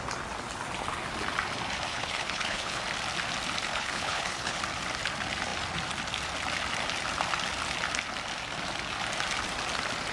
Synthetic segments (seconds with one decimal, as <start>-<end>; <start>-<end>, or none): 1.9-2.8; 3.7-4.6